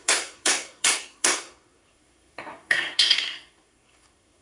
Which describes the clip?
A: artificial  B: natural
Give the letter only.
A